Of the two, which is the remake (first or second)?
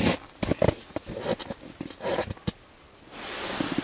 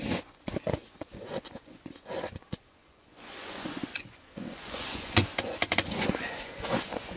second